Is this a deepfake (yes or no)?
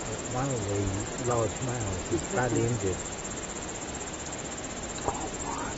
no